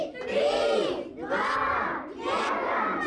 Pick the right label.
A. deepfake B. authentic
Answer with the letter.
B